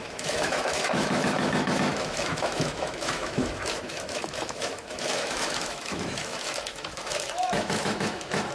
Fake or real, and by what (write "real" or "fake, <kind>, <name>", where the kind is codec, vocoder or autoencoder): fake, autoencoder, DAC-VAE